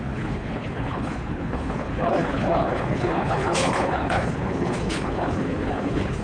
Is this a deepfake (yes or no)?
yes